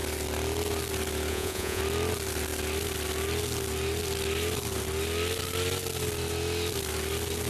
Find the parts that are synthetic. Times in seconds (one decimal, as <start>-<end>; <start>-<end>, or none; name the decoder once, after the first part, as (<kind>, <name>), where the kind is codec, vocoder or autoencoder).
1.3-1.8 (vocoder, Vocos)